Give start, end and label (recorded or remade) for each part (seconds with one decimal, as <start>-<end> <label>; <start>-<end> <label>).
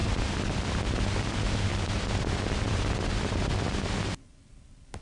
0.0-0.7 remade; 0.7-1.7 recorded; 1.7-5.0 remade